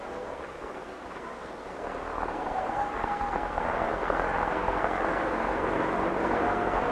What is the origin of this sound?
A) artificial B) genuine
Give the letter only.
A